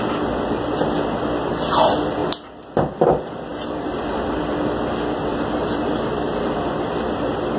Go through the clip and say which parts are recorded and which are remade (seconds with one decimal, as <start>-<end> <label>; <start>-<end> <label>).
0.0-3.5 recorded; 3.5-4.4 remade; 4.4-5.3 recorded; 5.3-6.6 remade; 6.6-7.6 recorded